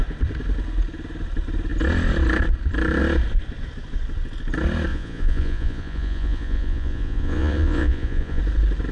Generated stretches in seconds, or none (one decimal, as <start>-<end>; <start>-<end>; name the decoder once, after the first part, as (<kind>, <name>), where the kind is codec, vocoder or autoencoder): 4.9-8.4 (vocoder, Vocos)